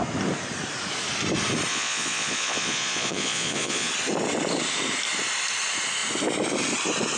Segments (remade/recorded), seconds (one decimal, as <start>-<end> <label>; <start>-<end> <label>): 0.0-1.7 recorded; 1.7-3.9 remade; 3.9-7.2 recorded

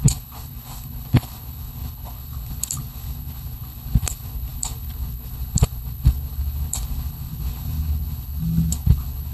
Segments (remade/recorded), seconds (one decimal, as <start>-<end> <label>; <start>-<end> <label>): 0.0-9.3 remade